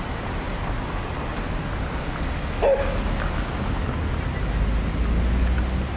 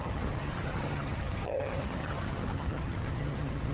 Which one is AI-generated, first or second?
second